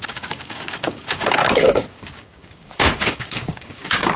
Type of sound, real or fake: fake